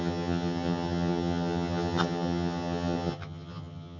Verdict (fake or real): fake